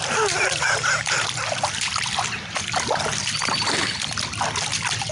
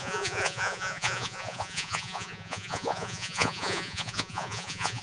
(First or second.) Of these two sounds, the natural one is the first